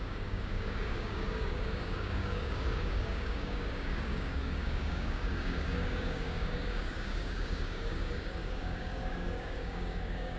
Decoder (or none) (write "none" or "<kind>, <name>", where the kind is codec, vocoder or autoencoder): codec, DAC